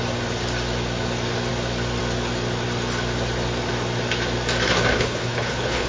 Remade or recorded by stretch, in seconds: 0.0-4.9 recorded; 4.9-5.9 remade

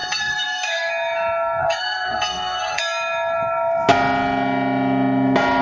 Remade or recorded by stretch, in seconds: 0.0-0.9 remade; 0.9-1.6 recorded; 1.6-2.8 remade; 2.8-5.6 recorded

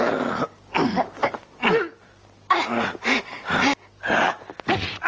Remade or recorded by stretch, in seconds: 0.0-1.2 recorded; 1.2-4.3 remade; 4.3-5.1 recorded

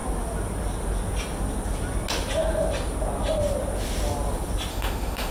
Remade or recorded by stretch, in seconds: 0.0-4.7 recorded; 4.7-5.3 remade

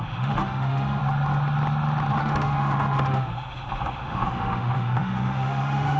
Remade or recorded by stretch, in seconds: 0.0-1.0 remade; 1.0-2.2 recorded; 2.2-6.0 remade

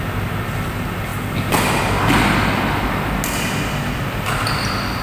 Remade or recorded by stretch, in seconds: 0.0-5.0 recorded